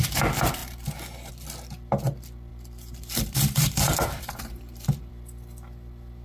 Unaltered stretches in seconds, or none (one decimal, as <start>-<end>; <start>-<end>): 0.0-2.5; 5.1-6.2